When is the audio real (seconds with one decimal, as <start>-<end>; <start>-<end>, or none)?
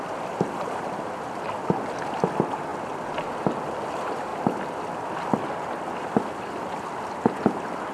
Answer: 0.0-7.9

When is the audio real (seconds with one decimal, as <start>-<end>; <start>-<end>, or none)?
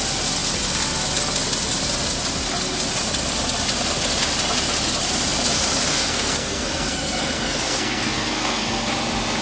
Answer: 0.0-5.9; 8.9-9.4